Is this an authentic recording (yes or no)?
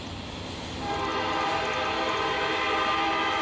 yes